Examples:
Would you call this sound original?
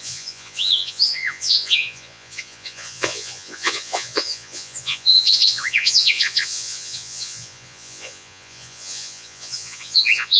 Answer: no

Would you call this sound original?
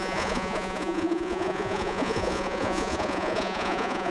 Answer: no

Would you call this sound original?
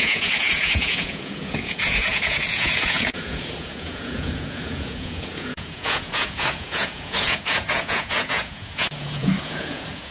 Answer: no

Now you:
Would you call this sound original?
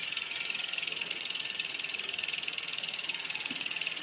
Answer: no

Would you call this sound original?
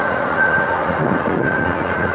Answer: no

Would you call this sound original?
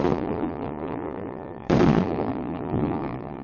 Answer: no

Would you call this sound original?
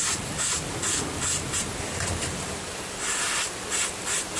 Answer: yes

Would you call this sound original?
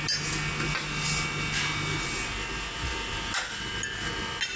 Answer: yes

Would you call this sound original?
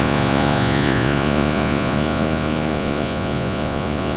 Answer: no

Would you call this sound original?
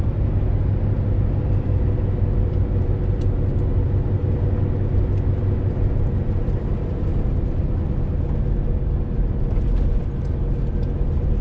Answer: yes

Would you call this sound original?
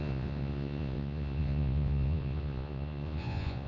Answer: no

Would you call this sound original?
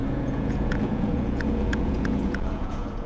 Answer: no